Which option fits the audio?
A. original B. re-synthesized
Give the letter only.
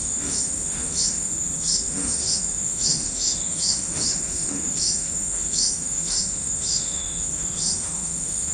B